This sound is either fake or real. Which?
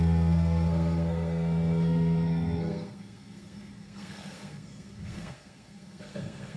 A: fake